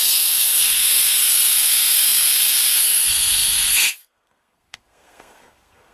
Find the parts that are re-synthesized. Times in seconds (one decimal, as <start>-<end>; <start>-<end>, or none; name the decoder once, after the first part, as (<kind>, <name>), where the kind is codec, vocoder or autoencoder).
0.0-5.9 (codec, SNAC)